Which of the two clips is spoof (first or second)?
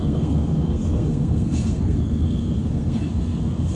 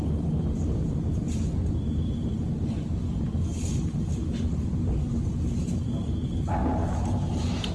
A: first